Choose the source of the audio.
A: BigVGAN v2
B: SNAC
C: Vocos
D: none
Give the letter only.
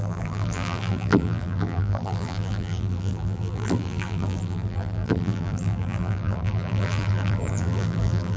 A